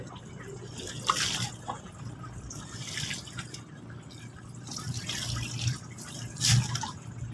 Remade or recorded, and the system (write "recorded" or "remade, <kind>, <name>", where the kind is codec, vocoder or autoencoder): recorded